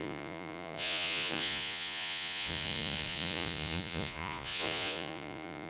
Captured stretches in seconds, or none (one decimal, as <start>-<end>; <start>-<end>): none

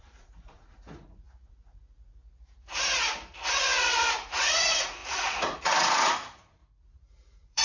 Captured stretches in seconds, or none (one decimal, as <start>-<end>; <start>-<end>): 2.2-3.6

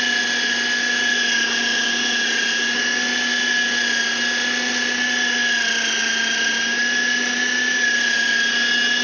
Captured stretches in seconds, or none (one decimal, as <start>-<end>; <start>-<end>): 0.0-9.0

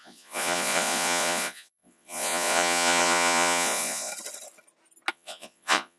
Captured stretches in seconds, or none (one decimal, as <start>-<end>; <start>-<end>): 4.1-5.1

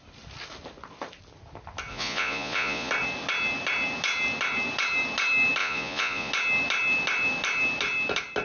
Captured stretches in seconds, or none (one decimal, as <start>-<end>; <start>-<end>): 0.0-1.9; 2.9-5.6; 6.3-8.4

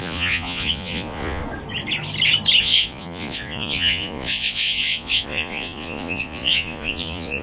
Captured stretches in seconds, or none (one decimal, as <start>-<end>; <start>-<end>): 1.4-2.6

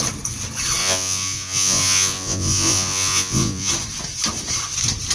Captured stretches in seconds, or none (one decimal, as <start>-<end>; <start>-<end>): 0.0-0.8; 3.7-5.1